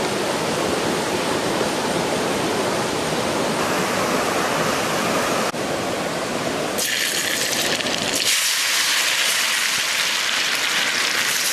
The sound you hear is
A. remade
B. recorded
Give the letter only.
B